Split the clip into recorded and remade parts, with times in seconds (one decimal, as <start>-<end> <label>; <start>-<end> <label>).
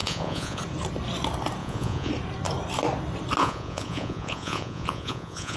0.0-0.6 remade; 0.6-1.6 recorded; 1.6-2.1 remade; 2.1-3.4 recorded; 3.4-5.6 remade